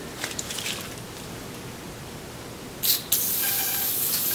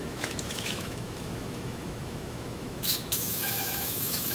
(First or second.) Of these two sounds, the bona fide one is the first